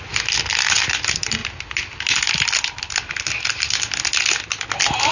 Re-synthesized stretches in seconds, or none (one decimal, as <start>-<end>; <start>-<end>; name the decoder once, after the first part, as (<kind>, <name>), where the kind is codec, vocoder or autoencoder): none